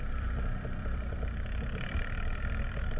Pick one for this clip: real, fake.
fake